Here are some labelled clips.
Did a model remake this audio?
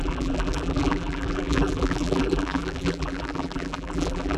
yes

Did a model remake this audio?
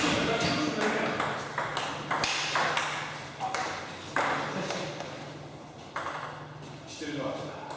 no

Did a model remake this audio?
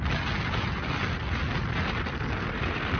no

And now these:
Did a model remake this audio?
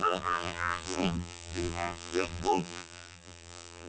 yes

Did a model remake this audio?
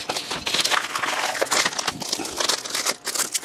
no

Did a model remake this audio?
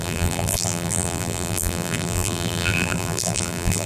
yes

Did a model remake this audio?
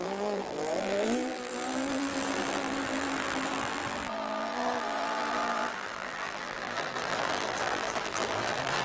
yes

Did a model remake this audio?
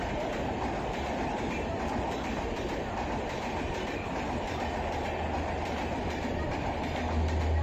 yes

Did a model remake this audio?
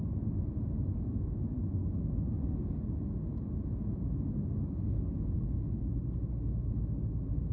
no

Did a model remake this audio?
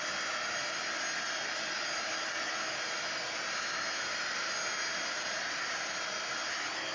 no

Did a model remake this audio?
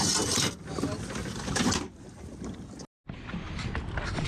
no